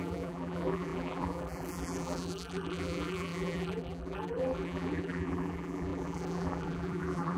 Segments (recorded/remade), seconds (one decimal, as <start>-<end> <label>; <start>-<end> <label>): 0.0-7.4 remade